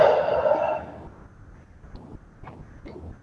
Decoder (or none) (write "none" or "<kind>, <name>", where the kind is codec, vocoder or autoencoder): none